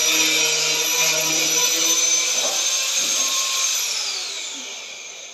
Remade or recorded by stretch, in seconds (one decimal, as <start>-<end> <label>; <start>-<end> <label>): 0.0-3.2 recorded; 3.2-3.7 remade; 3.7-4.6 recorded; 4.6-5.3 remade

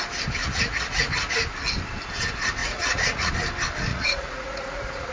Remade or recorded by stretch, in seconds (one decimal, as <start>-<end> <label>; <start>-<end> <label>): 0.0-0.4 recorded; 0.4-1.1 remade; 1.1-2.6 recorded; 2.6-3.3 remade; 3.3-3.9 recorded; 3.9-5.1 remade

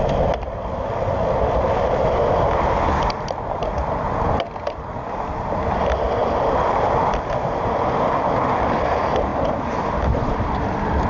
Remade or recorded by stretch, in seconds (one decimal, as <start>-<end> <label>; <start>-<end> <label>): 0.0-11.1 recorded

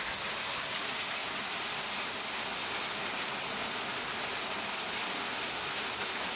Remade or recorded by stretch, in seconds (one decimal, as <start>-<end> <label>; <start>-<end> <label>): 0.0-3.6 recorded; 3.6-6.4 remade